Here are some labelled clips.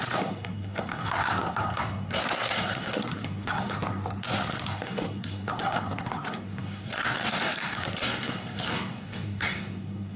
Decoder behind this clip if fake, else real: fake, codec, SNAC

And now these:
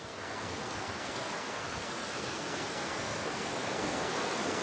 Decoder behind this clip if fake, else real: fake, codec, SNAC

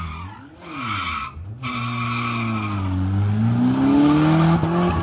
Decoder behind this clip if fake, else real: real